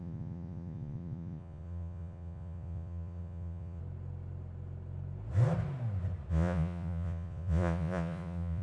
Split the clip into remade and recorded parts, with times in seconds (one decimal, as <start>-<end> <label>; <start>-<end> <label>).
0.0-3.8 remade; 3.8-6.3 recorded; 6.3-8.6 remade